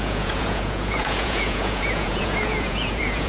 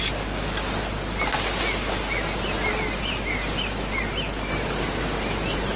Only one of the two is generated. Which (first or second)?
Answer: first